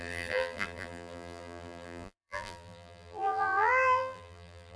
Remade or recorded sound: remade